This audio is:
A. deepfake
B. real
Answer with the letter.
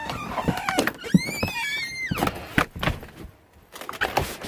B